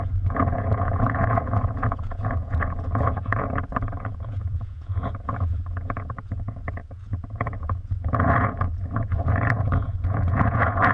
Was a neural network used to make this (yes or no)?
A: yes